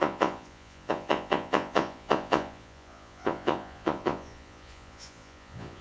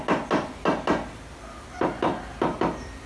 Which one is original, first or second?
second